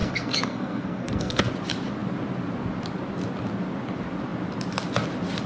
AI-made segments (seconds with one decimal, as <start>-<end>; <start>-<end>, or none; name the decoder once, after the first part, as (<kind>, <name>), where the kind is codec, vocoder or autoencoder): 0.0-1.5 (codec, SNAC)